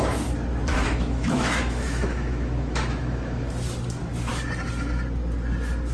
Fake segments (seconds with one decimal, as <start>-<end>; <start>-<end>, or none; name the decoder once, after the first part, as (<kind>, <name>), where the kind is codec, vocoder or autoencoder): 0.7-3.5 (autoencoder, DAC-VAE)